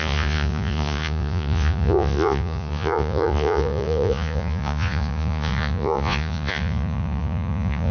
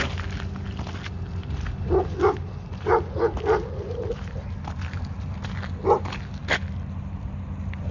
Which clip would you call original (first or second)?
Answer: second